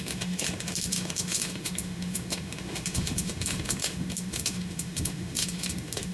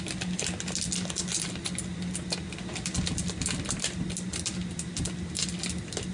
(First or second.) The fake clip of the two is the first